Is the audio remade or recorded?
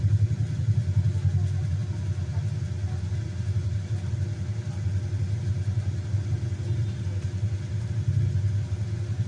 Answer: recorded